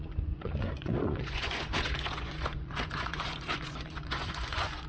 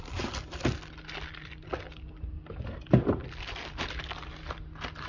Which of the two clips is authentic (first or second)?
second